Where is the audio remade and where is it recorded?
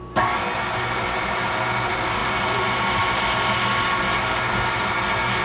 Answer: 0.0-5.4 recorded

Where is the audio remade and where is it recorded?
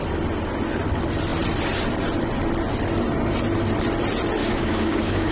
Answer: 0.0-4.4 recorded; 4.4-5.3 remade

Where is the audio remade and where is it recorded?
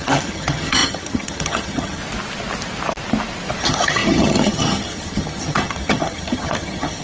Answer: 0.0-2.0 remade; 2.0-3.6 recorded; 3.6-7.0 remade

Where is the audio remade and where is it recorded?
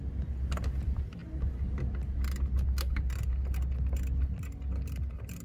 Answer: 0.0-5.4 recorded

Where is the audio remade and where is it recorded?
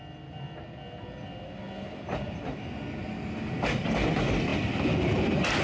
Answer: 0.0-5.6 recorded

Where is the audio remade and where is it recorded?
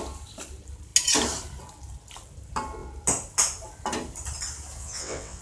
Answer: 0.0-4.8 recorded; 4.8-5.4 remade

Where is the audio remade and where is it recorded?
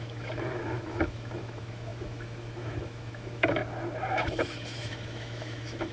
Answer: 0.0-3.6 remade; 3.6-4.1 recorded; 4.1-5.9 remade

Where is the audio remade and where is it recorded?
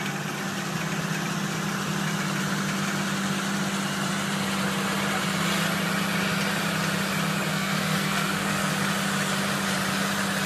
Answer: 0.0-7.5 recorded; 7.5-8.7 remade; 8.7-10.5 recorded